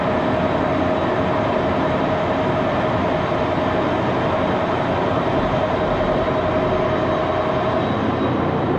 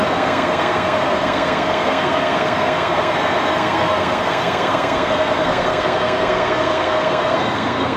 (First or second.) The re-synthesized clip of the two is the second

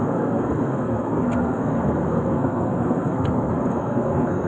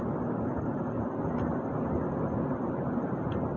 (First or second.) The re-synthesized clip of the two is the first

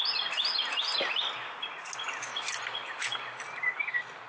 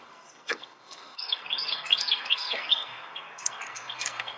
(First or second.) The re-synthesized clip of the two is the second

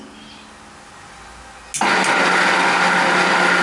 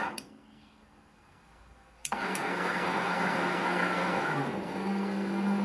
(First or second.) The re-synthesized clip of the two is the second